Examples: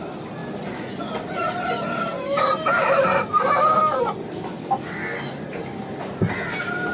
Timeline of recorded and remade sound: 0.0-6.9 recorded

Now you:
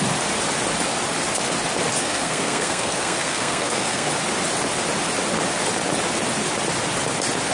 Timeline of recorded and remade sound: 0.0-2.0 recorded; 2.0-4.1 remade; 4.1-7.5 recorded

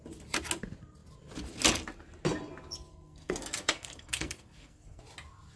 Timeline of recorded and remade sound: 0.0-2.9 recorded; 2.9-5.0 remade; 5.0-5.6 recorded

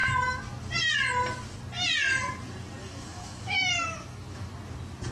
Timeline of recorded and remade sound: 0.0-2.8 recorded; 2.8-4.5 remade; 4.5-5.1 recorded